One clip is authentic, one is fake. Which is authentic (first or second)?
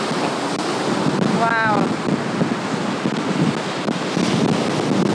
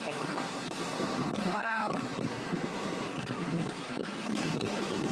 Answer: first